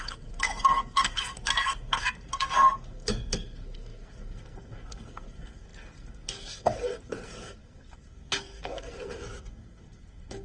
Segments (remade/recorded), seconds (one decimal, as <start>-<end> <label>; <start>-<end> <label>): 0.0-10.4 remade